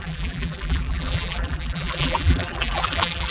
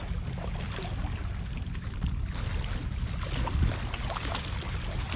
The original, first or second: second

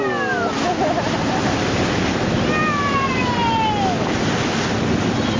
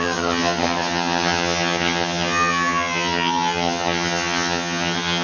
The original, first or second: first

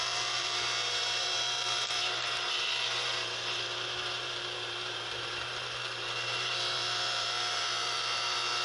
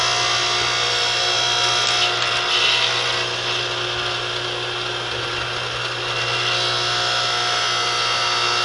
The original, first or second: second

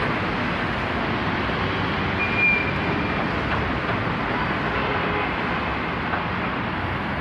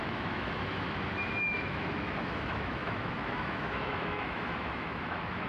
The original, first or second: first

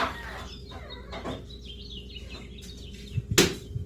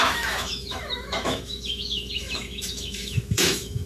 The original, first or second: first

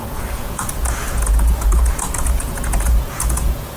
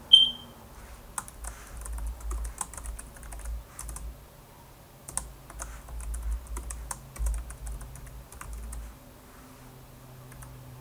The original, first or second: second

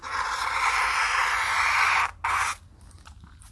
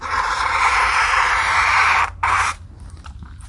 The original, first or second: first